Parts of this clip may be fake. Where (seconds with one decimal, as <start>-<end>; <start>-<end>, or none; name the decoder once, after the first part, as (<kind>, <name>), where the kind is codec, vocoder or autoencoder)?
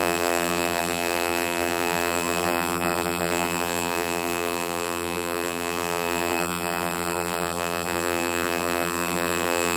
0.0-9.8 (vocoder, BigVGAN v2)